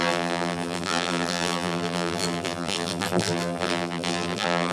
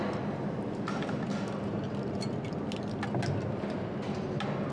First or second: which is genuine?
second